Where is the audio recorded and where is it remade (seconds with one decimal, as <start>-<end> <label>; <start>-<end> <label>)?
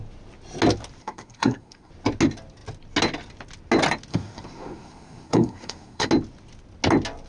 0.0-1.0 recorded; 1.0-1.9 remade; 1.9-4.1 recorded; 4.1-6.1 remade; 6.1-7.3 recorded